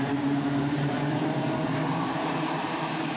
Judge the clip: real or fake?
fake